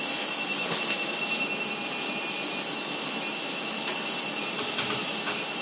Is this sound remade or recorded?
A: recorded